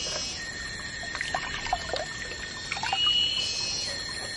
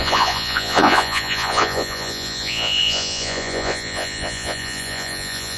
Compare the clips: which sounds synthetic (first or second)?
second